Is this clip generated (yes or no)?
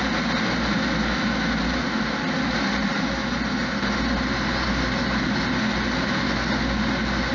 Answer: no